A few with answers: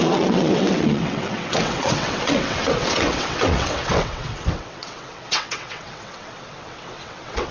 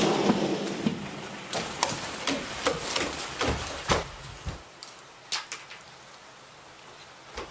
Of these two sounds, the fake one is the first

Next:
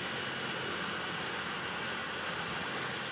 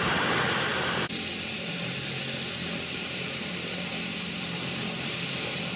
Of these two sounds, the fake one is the second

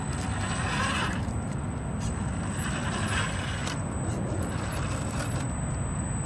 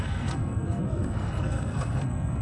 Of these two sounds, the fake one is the second